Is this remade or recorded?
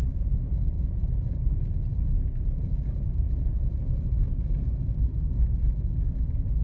recorded